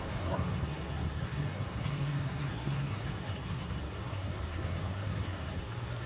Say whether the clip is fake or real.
fake